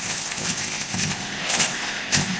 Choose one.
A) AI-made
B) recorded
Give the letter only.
A